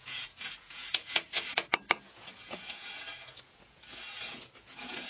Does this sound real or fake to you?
fake